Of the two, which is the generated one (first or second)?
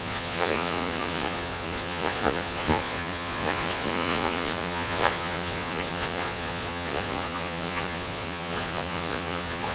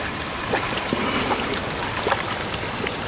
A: first